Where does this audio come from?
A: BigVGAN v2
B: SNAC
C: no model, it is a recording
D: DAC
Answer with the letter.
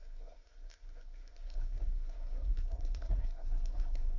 B